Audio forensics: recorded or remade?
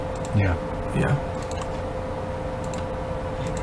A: recorded